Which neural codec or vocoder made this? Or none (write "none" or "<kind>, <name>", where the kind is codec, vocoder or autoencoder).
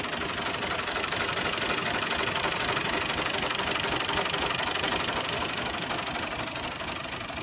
none